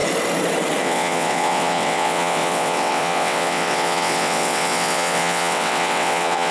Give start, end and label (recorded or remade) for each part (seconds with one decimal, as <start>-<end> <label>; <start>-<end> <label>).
0.0-0.8 recorded; 0.8-6.5 remade